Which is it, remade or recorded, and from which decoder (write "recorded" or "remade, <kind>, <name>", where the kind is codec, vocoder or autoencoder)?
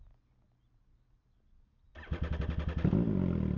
recorded